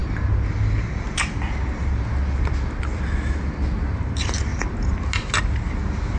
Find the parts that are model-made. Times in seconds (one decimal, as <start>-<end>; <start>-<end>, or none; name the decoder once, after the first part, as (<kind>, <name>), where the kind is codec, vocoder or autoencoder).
none